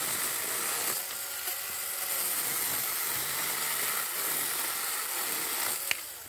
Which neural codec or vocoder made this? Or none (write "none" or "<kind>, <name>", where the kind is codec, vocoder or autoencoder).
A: none